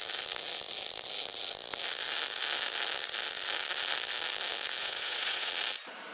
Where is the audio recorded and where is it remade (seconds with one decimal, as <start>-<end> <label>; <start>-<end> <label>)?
0.0-4.8 recorded; 4.8-5.5 remade; 5.5-6.1 recorded